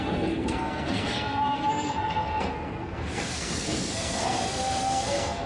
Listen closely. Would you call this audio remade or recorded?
remade